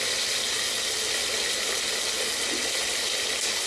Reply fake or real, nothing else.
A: real